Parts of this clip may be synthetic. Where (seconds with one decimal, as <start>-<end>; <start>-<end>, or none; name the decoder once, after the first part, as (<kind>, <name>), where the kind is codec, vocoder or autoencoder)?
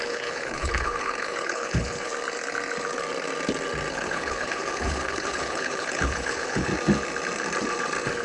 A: 0.0-2.1 (codec, HILCodec); 3.9-6.7